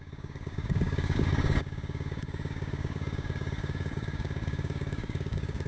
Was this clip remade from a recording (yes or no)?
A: yes